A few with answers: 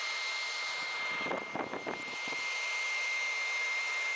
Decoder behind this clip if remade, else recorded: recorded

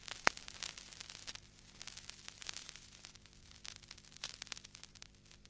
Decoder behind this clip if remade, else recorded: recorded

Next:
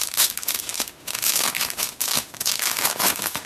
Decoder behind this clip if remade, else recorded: remade, autoencoder, DAC-VAE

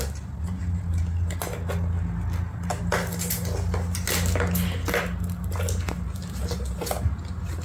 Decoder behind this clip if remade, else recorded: recorded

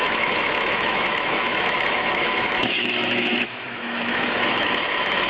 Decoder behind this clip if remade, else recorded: remade, autoencoder, DAC-VAE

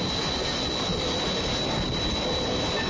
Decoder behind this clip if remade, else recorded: recorded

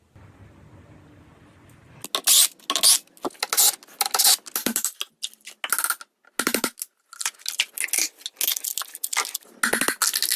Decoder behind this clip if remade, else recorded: recorded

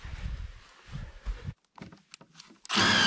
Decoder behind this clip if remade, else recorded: recorded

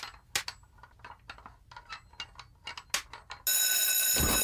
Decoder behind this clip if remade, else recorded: recorded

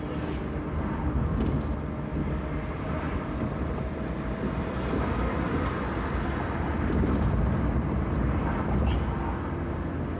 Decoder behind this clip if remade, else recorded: recorded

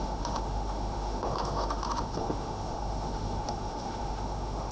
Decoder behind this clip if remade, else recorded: remade, autoencoder, DAC-VAE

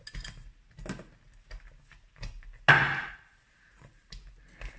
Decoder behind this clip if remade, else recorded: recorded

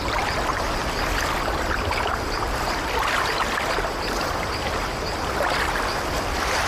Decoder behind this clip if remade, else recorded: recorded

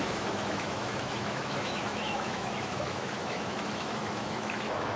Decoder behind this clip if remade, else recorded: remade, autoencoder, DAC-VAE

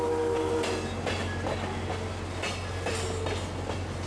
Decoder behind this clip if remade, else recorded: recorded